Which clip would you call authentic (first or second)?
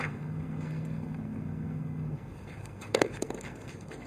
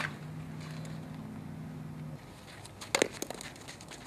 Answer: second